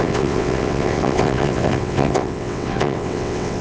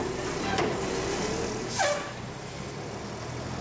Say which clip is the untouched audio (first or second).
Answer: second